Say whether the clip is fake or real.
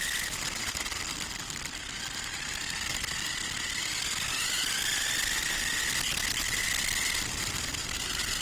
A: real